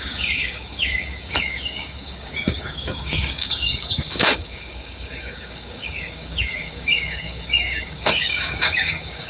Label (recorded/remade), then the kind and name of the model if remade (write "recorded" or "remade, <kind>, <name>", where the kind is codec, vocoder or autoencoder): remade, codec, DAC